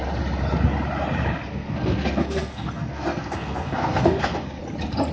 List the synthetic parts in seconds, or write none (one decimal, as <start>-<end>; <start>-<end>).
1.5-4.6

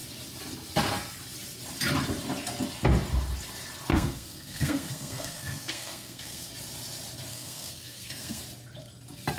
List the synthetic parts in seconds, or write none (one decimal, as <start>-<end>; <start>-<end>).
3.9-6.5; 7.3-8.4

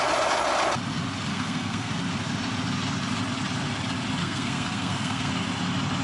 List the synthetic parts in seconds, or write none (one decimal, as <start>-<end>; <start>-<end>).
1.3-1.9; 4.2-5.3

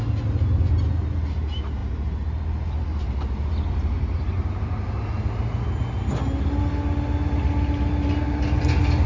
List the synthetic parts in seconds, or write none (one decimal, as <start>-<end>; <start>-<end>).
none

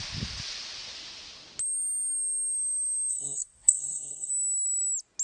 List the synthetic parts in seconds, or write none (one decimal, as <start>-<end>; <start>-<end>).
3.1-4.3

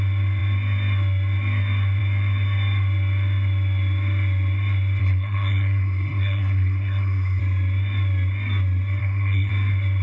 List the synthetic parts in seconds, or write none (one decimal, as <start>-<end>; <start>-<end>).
5.0-7.4; 9.0-9.5